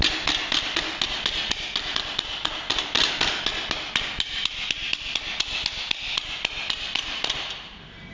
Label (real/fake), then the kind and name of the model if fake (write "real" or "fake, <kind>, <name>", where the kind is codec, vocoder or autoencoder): real